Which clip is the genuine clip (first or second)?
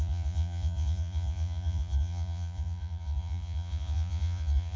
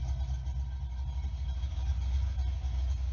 second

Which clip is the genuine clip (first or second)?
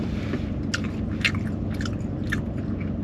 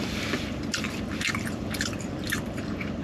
first